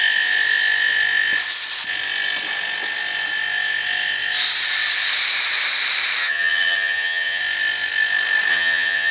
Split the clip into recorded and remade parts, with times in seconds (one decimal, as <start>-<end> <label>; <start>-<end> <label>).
0.0-6.2 recorded; 6.2-7.4 remade; 7.4-8.5 recorded; 8.5-9.1 remade